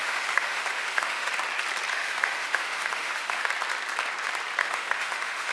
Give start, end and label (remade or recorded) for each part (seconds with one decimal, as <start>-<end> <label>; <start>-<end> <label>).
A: 0.0-1.3 remade; 1.3-1.9 recorded; 1.9-3.5 remade; 3.5-4.6 recorded; 4.6-5.5 remade